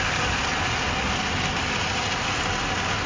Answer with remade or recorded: recorded